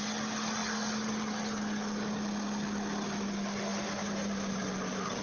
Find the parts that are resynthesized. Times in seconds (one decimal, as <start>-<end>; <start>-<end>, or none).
none